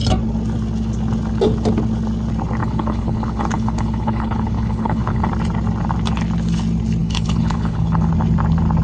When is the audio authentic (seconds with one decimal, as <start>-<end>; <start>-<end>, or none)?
0.0-2.6; 5.3-7.0; 8.1-8.8